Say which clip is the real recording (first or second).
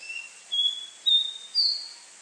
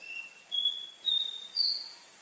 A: first